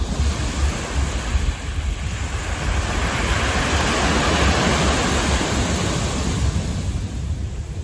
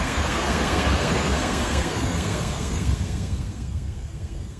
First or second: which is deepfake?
second